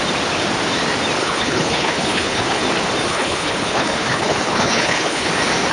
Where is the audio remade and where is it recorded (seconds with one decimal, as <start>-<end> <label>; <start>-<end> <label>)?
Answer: 0.0-1.2 recorded; 1.2-2.6 remade; 2.6-3.1 recorded; 3.1-5.3 remade; 5.3-5.7 recorded